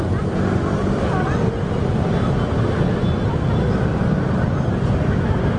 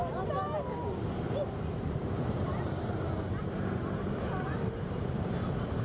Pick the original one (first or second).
first